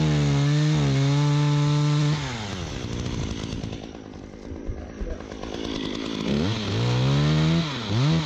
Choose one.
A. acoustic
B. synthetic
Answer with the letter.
A